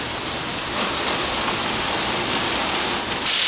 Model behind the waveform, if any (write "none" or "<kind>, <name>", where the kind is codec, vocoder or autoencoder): none